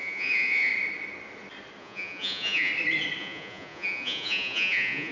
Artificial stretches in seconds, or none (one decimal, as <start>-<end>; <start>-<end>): 0.0-0.7; 1.8-2.7; 3.2-5.1